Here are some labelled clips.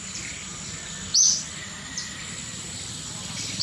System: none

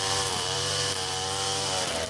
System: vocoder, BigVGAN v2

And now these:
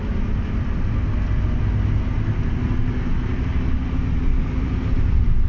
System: none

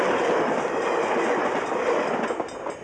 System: none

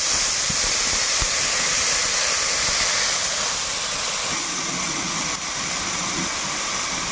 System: vocoder, BigVGAN v2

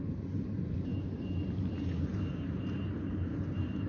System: vocoder, BigVGAN v2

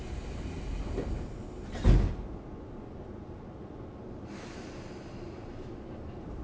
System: none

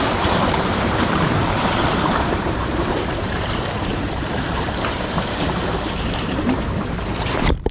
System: vocoder, BigVGAN v2